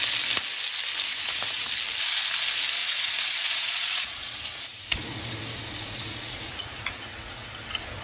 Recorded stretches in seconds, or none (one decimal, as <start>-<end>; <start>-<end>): 0.0-1.1; 1.7-2.8; 7.5-8.0